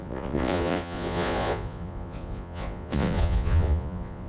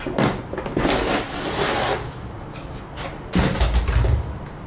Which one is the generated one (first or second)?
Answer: first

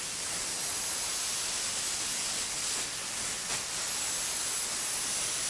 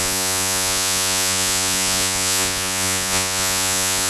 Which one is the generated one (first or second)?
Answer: second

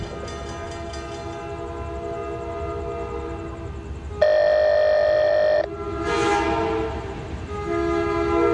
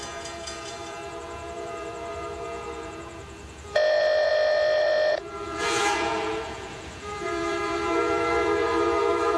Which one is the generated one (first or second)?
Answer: second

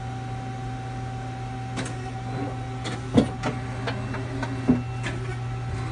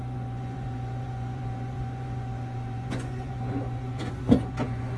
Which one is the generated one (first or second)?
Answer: second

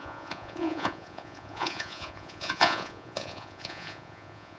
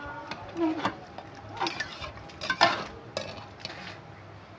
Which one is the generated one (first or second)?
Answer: first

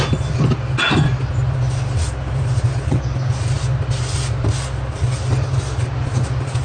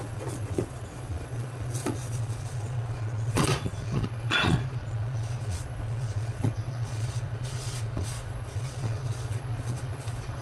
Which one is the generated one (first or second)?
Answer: second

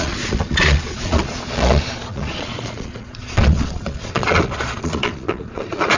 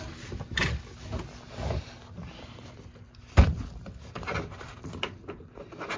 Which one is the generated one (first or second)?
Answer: first